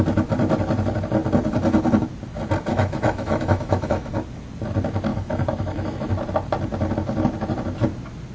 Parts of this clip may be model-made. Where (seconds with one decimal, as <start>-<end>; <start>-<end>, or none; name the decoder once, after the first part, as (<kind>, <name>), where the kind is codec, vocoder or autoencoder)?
2.7-4.1 (autoencoder, DAC-VAE); 5.1-6.0